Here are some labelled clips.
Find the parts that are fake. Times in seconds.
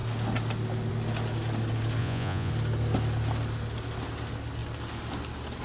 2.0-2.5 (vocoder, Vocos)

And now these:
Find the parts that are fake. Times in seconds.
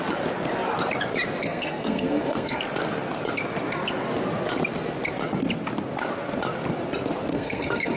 1.4-2.6 (codec, SNAC); 7.3-8.0